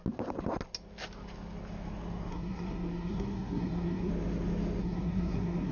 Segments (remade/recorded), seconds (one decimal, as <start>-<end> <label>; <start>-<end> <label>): 0.0-2.3 recorded; 2.3-4.1 remade; 4.1-4.8 recorded; 4.8-5.7 remade